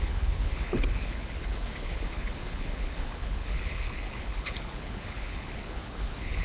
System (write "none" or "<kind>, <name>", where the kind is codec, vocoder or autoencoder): codec, HILCodec